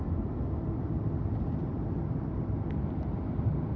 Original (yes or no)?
yes